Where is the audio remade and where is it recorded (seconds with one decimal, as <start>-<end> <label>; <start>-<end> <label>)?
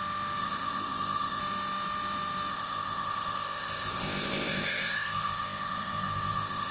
0.0-0.4 recorded; 0.4-1.4 remade; 1.4-2.5 recorded; 2.5-6.7 remade